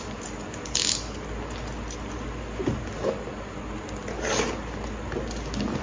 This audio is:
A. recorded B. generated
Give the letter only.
A